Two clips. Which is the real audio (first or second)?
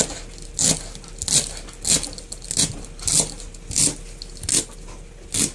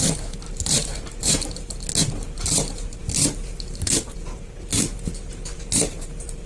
first